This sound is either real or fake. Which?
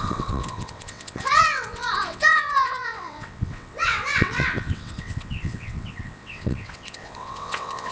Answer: fake